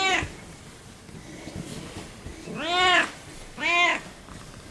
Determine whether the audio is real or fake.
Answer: real